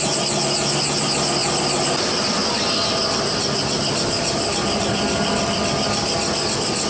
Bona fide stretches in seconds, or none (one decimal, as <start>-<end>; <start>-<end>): 0.0-6.9